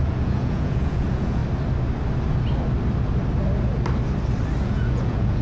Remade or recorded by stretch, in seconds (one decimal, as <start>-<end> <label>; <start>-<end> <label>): 0.0-1.4 remade; 1.4-4.6 recorded; 4.6-5.4 remade